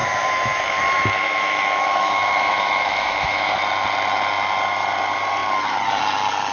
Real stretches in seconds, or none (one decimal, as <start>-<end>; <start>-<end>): 3.6-6.5